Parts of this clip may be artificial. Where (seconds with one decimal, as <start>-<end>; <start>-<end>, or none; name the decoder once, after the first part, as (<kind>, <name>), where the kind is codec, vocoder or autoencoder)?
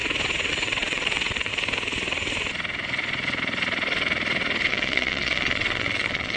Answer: 0.5-1.5 (vocoder, WaveNeXt); 4.7-6.4